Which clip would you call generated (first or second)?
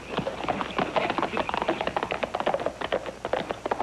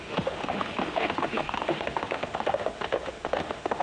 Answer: second